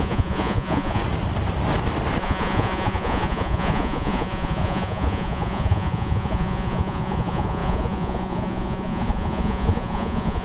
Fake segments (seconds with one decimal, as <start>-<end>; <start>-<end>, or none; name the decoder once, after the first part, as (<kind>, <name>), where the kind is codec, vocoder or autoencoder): 0.0-1.0 (vocoder, Vocos); 2.2-10.4